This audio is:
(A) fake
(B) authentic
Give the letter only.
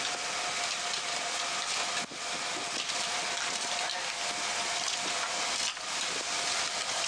B